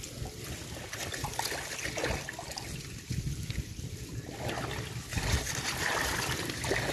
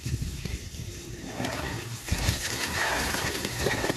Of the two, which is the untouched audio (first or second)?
first